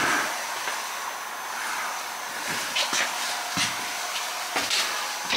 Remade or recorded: recorded